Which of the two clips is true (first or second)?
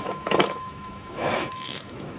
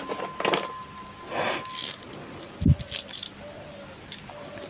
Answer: second